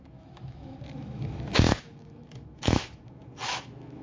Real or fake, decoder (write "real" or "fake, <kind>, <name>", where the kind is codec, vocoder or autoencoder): fake, autoencoder, DAC-VAE